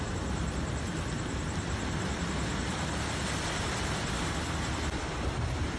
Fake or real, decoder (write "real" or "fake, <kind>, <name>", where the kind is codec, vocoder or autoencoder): real